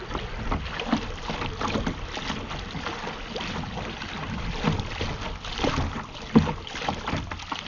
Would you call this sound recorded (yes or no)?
yes